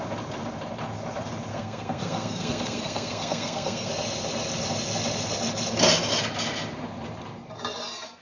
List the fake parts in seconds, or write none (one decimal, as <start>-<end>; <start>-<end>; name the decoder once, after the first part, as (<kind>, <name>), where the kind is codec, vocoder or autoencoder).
1.5-3.9 (codec, SNAC)